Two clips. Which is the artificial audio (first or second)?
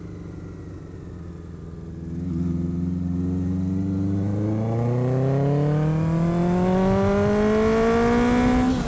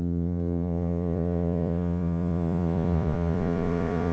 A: second